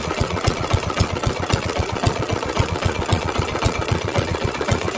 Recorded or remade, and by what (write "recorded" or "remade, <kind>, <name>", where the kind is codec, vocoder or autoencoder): remade, vocoder, Vocos